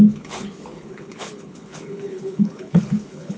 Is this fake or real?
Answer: fake